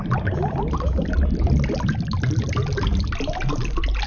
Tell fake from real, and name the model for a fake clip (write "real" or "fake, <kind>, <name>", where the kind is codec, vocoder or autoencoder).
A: real